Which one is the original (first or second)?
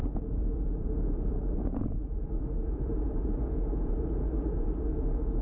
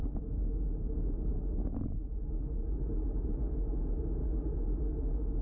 second